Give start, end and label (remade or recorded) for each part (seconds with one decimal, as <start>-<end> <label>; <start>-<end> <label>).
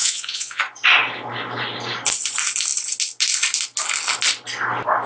0.0-0.6 remade; 0.6-5.1 recorded